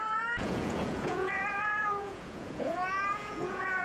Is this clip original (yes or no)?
no